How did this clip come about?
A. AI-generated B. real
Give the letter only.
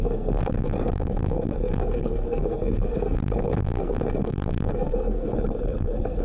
A